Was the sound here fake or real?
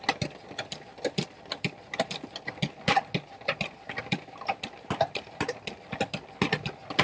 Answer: real